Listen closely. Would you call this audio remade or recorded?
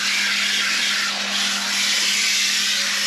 recorded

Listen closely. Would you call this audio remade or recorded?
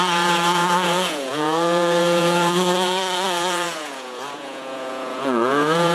remade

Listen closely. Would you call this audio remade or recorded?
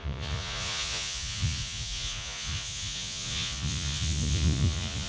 remade